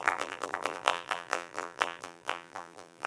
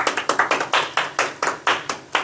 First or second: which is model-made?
first